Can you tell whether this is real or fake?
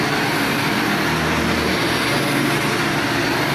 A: real